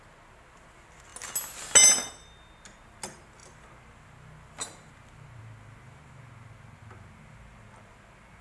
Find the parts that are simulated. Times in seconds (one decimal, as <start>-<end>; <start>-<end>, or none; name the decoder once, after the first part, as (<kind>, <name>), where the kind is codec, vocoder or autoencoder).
none